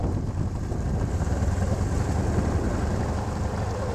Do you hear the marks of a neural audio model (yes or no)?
no